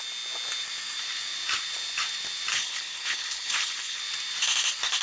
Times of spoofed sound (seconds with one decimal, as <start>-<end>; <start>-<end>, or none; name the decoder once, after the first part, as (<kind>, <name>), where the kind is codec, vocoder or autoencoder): 2.5-4.0 (codec, HILCodec)